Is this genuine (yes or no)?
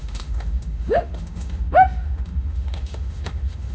no